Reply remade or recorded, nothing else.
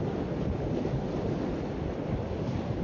recorded